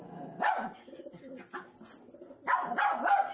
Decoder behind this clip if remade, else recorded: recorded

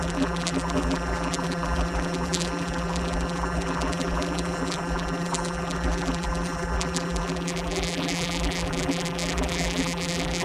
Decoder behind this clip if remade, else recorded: remade, vocoder, BigVGAN v2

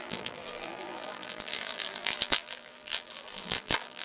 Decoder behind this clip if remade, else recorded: remade, vocoder, BigVGAN v2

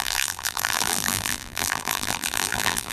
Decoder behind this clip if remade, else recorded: remade, vocoder, BigVGAN v2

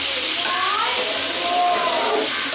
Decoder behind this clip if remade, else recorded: recorded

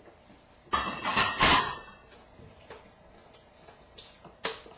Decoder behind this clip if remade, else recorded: remade, vocoder, BigVGAN v2